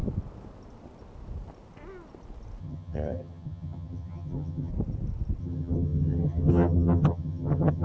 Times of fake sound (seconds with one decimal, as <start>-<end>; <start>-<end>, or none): 2.6-4.7; 5.4-7.8